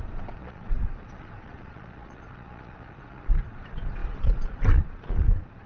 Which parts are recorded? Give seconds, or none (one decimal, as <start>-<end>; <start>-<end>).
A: none